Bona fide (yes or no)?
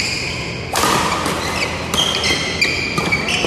yes